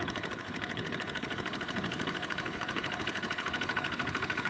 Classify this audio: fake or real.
fake